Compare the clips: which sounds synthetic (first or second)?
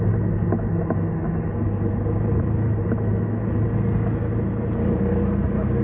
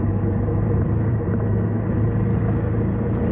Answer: second